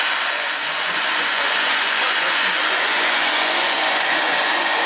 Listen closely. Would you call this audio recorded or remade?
remade